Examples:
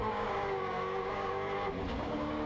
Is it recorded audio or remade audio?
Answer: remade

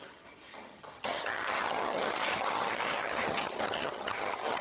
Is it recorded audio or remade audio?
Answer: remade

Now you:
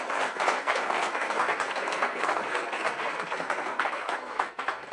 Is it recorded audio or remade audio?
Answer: remade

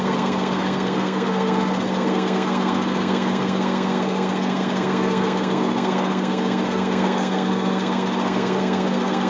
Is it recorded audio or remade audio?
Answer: remade